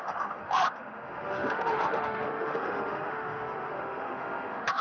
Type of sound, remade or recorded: remade